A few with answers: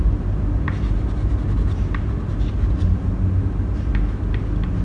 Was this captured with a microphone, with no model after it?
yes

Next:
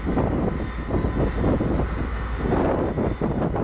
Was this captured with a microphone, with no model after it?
yes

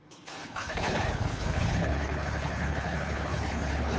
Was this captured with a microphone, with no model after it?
no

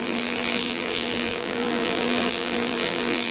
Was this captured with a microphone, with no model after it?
no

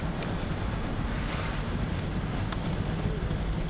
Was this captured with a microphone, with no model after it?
yes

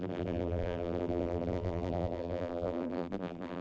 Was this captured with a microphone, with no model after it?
no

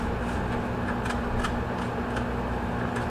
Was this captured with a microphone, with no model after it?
yes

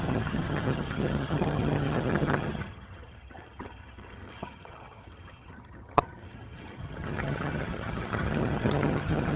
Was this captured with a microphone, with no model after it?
no